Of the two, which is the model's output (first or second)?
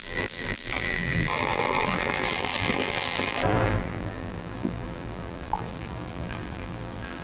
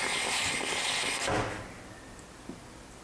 first